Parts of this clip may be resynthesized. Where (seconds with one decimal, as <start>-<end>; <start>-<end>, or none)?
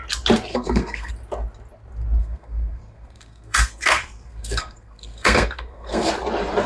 0.5-1.1; 2.2-6.1